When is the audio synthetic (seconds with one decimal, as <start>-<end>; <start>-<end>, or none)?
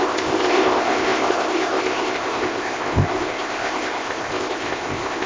0.0-5.3